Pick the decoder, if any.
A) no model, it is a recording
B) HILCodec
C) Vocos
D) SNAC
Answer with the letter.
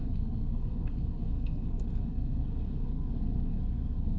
D